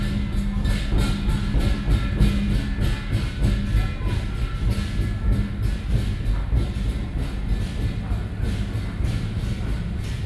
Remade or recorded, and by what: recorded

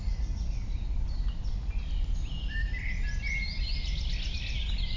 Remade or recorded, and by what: recorded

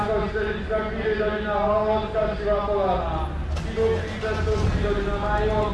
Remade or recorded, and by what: recorded